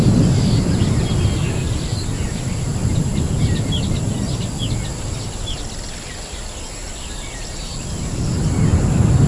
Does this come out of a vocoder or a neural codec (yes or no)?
no